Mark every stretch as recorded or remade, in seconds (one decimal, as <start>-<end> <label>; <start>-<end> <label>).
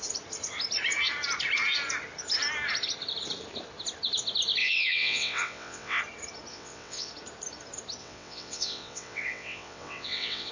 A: 0.0-4.6 recorded; 4.6-6.0 remade; 6.0-6.5 recorded; 6.5-7.1 remade; 7.1-8.0 recorded; 8.0-10.5 remade